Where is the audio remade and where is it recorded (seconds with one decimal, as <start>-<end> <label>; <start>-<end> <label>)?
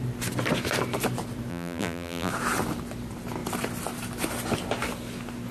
0.0-1.5 recorded; 1.5-2.3 remade; 2.3-5.5 recorded